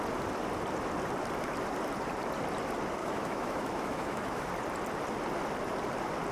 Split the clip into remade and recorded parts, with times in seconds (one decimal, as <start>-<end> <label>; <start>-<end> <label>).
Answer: 0.0-3.0 recorded; 3.0-4.5 remade; 4.5-6.3 recorded